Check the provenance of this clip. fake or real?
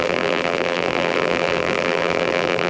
fake